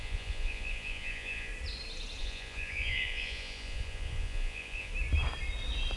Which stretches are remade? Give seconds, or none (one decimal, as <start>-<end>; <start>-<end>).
0.0-1.5; 2.2-4.9